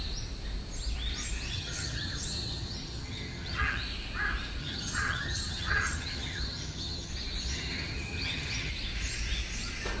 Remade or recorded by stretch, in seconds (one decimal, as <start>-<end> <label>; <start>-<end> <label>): 0.0-1.5 recorded; 1.5-3.8 remade; 3.8-4.6 recorded; 4.6-7.1 remade; 7.1-7.5 recorded; 7.5-8.7 remade; 8.7-10.0 recorded